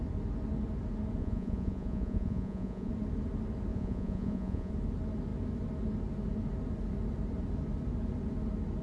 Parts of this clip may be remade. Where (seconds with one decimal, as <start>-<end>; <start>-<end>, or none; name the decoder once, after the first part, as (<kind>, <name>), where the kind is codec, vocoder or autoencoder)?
1.2-2.9 (vocoder, Vocos); 3.7-4.7